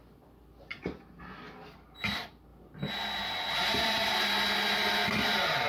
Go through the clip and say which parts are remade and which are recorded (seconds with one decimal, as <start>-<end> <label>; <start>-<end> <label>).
0.0-5.7 recorded